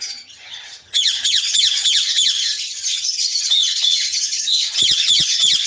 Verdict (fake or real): fake